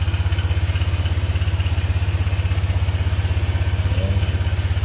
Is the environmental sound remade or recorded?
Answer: recorded